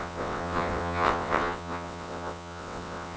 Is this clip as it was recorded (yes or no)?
no